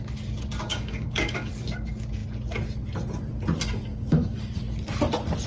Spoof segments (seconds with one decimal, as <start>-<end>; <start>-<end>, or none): 0.7-1.5; 3.9-4.5